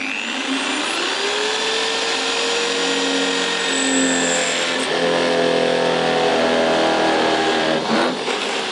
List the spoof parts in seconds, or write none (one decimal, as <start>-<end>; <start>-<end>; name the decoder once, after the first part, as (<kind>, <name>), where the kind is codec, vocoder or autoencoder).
none